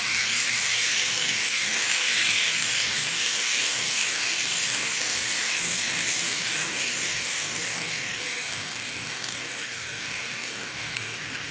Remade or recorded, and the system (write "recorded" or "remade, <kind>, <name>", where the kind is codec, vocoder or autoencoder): remade, codec, DAC